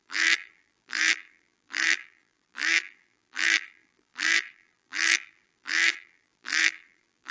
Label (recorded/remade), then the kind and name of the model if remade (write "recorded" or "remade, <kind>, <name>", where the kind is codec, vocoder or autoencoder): remade, vocoder, BigVGAN v2